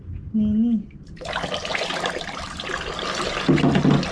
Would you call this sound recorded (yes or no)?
yes